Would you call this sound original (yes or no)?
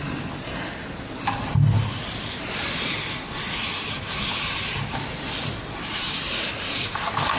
yes